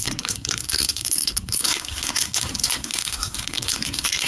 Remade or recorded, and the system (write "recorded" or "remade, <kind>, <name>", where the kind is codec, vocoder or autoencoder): remade, codec, SNAC